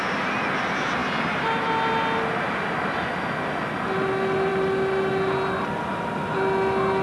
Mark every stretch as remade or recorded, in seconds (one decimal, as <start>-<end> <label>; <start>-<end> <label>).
0.0-7.0 recorded